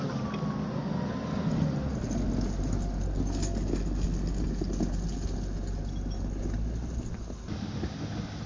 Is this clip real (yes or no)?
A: yes